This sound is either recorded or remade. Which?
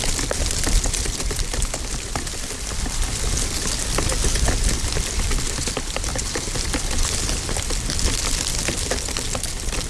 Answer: recorded